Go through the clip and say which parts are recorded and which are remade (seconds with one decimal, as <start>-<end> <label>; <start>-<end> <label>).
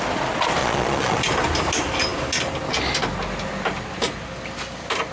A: 0.0-0.6 recorded; 0.6-1.2 remade; 1.2-5.1 recorded